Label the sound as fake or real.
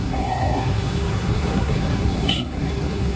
fake